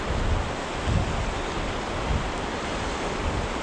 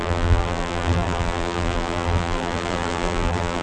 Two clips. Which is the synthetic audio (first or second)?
second